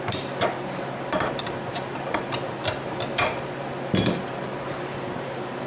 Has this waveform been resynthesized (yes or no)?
yes